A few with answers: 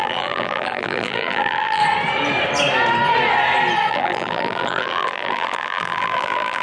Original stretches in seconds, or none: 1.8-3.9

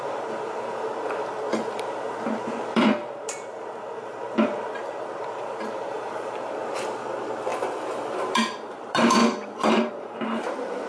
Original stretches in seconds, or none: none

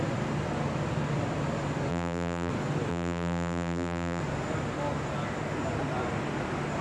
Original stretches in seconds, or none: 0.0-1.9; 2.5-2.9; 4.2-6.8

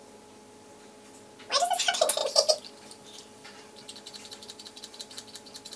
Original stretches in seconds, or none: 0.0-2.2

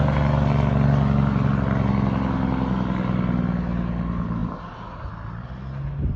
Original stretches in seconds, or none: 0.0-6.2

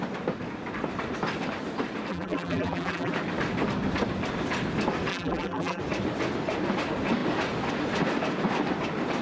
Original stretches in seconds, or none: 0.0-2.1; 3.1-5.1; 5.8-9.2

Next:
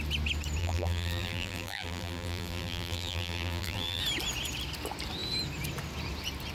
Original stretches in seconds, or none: 0.0-0.6; 4.0-6.5

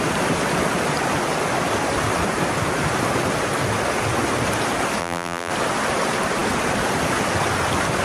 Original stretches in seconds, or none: 0.0-5.0; 5.5-8.0